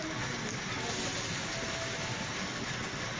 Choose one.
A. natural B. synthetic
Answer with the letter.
A